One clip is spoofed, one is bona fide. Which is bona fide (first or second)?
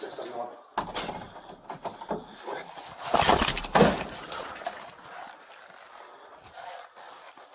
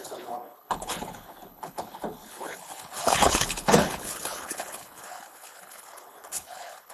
first